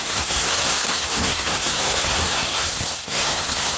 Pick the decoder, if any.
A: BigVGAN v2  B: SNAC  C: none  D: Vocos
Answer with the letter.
B